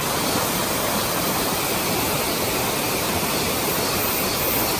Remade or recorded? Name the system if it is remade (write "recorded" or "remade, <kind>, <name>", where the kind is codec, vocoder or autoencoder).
recorded